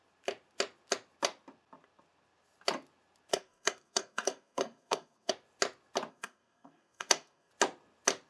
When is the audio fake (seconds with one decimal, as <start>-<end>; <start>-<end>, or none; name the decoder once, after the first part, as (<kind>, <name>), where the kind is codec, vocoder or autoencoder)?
3.3-5.3 (codec, SNAC); 6.1-7.5